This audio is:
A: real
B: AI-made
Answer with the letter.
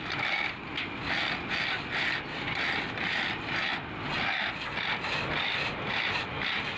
A